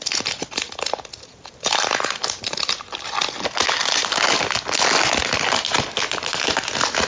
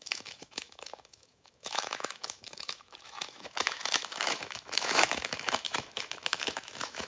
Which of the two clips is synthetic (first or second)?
second